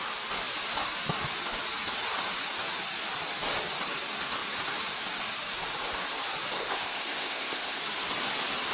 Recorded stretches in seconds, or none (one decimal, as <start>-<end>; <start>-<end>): 0.0-6.6; 7.8-8.7